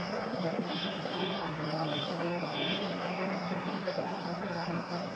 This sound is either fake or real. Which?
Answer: fake